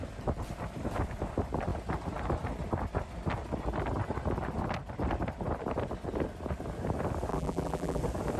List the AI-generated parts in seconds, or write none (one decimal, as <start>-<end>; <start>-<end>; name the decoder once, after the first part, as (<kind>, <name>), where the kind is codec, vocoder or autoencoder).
7.3-8.0 (vocoder, BigVGAN v2)

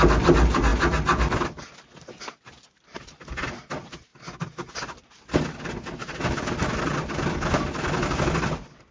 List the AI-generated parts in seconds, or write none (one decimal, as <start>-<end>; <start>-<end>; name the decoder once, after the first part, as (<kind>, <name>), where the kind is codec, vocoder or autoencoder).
none